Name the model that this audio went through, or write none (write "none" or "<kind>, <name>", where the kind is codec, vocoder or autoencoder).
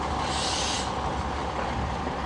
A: none